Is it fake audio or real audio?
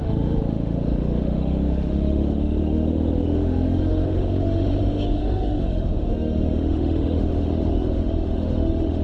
fake